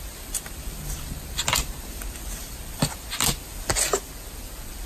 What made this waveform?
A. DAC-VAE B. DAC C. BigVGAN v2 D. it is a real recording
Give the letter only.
D